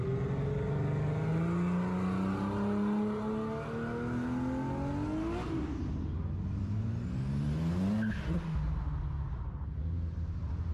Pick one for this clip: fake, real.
real